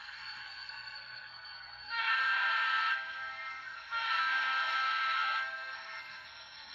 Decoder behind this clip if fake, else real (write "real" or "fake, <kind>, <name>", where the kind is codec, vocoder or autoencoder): fake, codec, SNAC